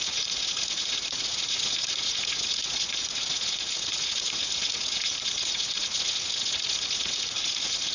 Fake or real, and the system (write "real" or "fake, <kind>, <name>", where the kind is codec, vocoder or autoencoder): fake, vocoder, Vocos